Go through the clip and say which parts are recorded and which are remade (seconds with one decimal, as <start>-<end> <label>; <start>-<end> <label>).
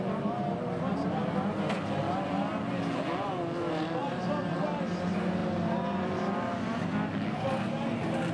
0.0-8.3 recorded